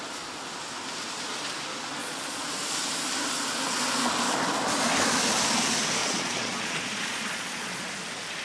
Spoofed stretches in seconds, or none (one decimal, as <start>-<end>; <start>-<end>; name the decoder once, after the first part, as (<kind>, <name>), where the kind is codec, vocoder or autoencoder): 2.0-2.5 (vocoder, Vocos); 6.0-7.9